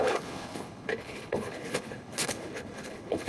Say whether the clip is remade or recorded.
remade